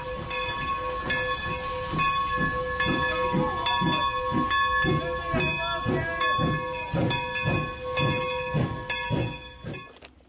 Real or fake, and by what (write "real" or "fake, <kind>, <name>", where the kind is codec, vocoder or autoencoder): real